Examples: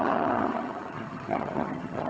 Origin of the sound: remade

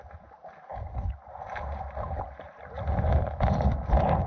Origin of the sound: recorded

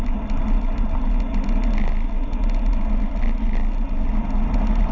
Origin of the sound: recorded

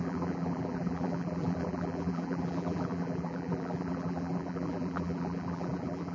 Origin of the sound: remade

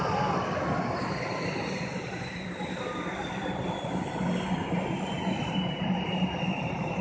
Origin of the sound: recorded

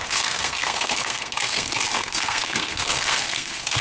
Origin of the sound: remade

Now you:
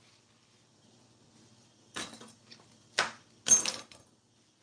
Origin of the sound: recorded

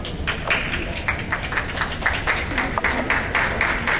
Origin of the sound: recorded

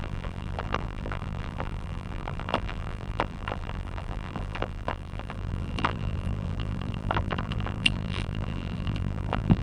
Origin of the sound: remade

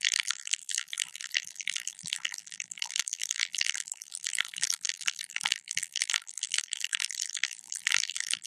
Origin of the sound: remade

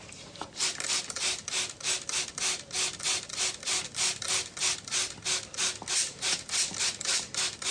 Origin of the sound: recorded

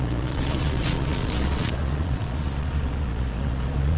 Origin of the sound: remade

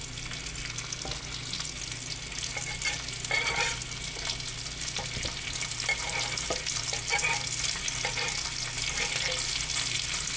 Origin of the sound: recorded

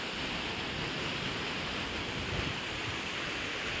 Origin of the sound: recorded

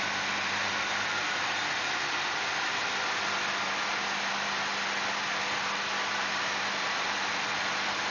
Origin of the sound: recorded